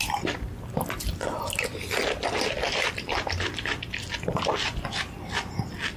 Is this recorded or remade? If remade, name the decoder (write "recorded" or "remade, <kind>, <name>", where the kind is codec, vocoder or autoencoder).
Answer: recorded